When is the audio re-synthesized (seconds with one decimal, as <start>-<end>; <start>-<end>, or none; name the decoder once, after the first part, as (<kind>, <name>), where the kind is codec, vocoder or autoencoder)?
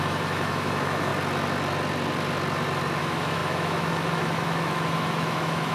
0.0-1.1 (autoencoder, DAC-VAE); 3.0-5.7